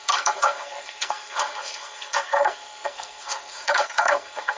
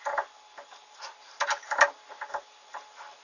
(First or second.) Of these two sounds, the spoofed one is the first